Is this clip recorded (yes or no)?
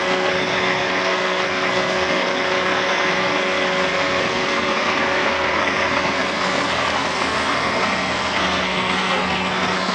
no